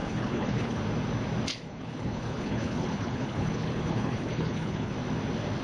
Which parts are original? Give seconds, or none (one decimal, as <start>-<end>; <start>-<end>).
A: 0.8-1.5; 4.9-5.6